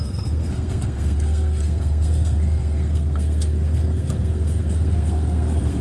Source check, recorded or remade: remade